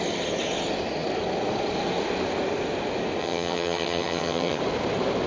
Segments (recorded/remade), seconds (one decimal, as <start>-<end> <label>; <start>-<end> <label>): 0.0-3.2 recorded; 3.2-4.6 remade; 4.6-5.3 recorded